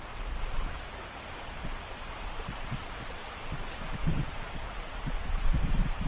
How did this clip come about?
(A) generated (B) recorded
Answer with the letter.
B